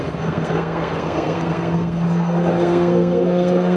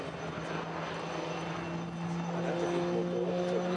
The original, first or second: second